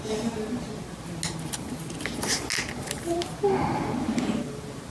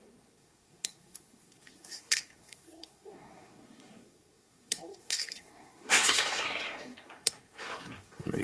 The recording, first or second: first